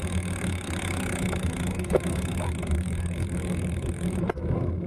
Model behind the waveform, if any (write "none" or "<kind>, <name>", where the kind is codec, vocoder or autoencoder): autoencoder, DAC-VAE